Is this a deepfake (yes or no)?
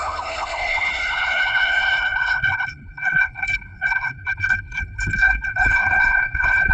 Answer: yes